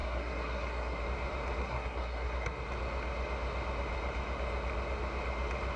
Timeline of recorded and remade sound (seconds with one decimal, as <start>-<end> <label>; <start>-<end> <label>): 0.0-1.0 remade; 1.0-1.6 recorded; 1.6-2.6 remade; 2.6-5.8 recorded